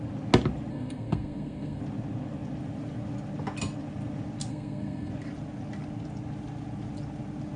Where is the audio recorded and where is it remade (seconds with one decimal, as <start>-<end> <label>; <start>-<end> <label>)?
0.0-0.7 recorded; 0.7-1.8 remade; 1.8-4.5 recorded; 4.5-5.1 remade; 5.1-7.6 recorded